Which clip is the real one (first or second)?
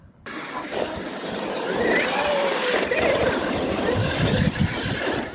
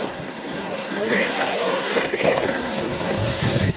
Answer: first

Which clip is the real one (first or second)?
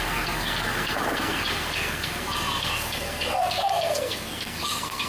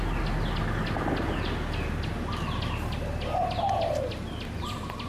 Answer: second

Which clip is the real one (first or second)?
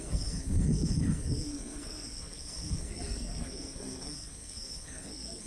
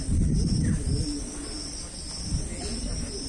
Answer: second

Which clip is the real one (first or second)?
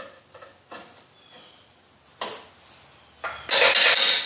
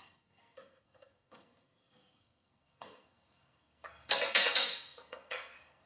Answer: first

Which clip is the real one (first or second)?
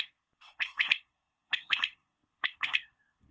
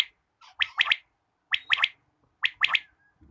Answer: second